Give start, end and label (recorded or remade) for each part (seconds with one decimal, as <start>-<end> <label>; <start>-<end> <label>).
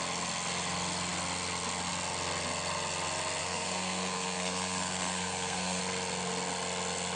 0.0-3.4 recorded; 3.4-5.8 remade; 5.8-7.2 recorded